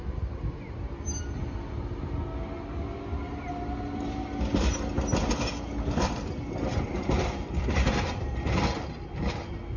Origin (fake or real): real